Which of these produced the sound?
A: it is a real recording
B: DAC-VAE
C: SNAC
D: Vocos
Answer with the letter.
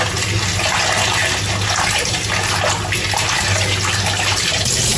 A